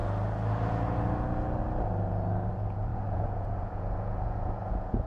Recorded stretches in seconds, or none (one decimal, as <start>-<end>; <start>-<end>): 0.0-2.5